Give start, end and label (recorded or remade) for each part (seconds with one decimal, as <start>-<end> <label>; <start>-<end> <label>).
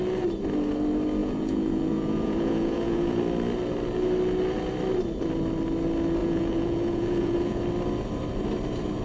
0.0-1.2 recorded; 1.2-3.2 remade; 3.2-6.2 recorded; 6.2-7.6 remade; 7.6-9.0 recorded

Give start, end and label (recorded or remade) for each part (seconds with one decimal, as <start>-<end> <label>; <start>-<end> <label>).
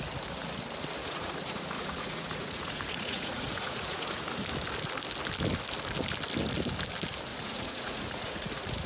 0.0-1.0 recorded; 1.0-4.4 remade; 4.4-7.3 recorded; 7.3-8.5 remade; 8.5-8.9 recorded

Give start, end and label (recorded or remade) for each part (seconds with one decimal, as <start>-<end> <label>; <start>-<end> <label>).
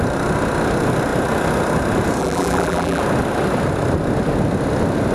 0.0-2.2 recorded; 2.2-3.0 remade; 3.0-5.1 recorded